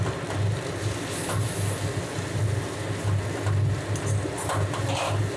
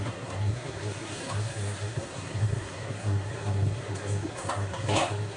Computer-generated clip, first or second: second